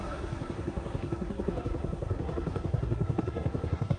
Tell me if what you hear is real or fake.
fake